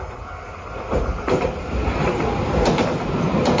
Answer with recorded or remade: recorded